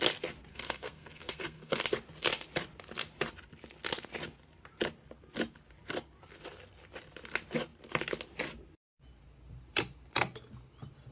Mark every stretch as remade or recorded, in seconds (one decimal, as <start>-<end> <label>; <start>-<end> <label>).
0.0-0.5 recorded; 0.5-1.8 remade; 1.8-11.1 recorded